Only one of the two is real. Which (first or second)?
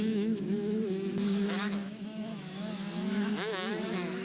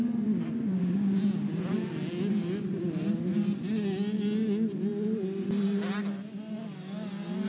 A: second